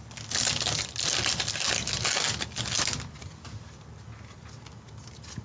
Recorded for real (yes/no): yes